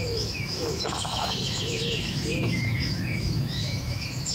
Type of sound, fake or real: fake